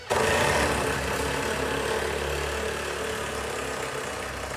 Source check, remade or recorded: recorded